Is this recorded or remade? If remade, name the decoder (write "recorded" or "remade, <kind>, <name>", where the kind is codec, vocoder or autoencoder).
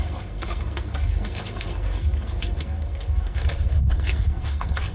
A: remade, codec, SNAC